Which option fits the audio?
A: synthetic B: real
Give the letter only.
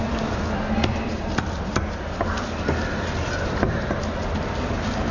B